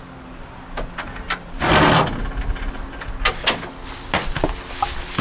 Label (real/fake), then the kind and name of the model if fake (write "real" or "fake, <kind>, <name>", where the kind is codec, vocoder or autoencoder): real